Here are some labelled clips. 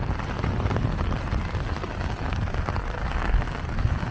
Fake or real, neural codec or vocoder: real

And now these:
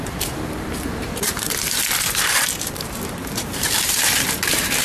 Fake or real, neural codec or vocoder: fake, vocoder, BigVGAN v2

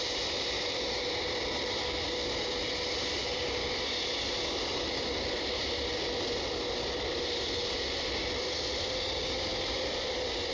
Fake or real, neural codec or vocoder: real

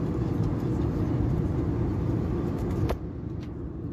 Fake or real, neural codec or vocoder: real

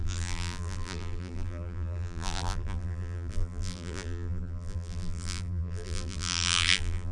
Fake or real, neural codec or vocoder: fake, vocoder, BigVGAN v2